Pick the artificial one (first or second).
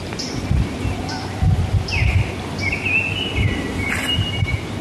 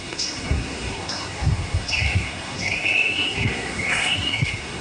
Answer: second